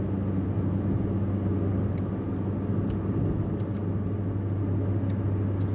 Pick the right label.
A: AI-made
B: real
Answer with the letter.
B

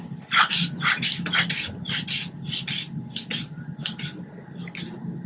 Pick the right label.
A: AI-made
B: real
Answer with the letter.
B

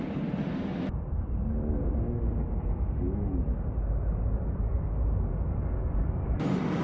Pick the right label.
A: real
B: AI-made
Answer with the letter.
A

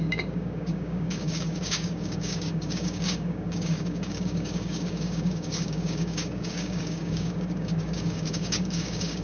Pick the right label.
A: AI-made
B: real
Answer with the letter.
A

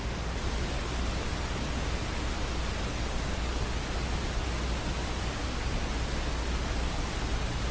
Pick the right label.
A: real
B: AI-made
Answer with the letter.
A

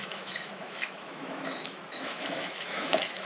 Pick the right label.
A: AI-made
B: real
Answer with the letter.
A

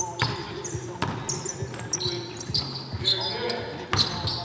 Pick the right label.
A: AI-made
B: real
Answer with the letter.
B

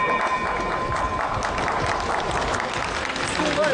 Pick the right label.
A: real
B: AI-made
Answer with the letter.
B